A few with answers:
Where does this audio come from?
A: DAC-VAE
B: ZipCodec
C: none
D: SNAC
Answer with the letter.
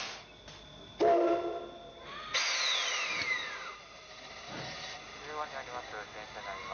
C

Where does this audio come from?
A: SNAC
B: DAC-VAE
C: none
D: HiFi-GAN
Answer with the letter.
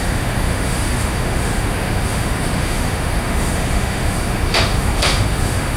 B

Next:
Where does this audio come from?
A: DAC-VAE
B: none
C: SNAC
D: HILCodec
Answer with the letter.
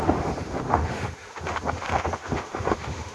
A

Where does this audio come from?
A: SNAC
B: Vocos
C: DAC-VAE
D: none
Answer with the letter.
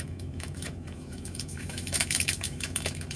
C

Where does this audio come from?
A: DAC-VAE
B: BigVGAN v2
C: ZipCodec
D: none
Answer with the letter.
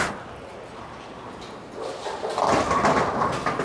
D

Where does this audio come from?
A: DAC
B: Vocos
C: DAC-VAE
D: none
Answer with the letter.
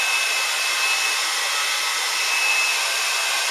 D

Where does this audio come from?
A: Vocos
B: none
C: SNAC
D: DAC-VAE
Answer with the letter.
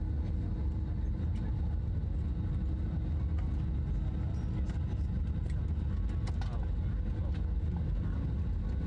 B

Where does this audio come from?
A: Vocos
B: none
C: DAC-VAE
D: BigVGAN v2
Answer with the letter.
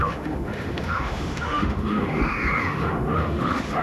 C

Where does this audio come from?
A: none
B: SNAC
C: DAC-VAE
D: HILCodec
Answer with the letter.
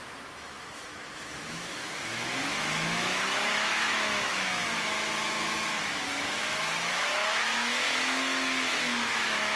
C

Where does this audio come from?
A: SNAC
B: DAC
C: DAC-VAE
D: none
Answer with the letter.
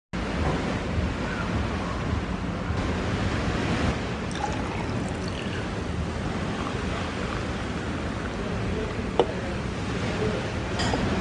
D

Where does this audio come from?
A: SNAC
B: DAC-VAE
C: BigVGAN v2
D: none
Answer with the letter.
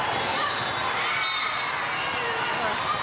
D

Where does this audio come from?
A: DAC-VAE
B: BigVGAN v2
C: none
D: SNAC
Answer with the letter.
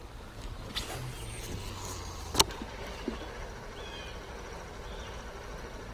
C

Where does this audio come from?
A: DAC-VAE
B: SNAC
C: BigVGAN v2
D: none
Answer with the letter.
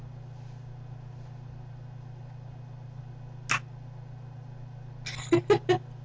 D